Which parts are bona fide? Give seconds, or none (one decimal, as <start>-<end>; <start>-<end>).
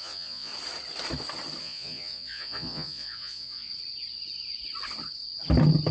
0.5-1.6; 3.7-5.9